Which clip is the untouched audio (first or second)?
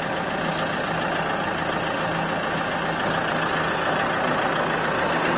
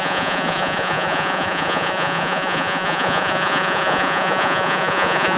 first